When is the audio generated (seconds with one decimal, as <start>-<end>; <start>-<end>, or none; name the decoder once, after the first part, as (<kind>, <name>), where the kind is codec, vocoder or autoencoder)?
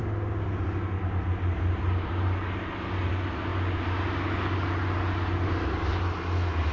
none